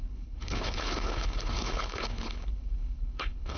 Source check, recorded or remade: remade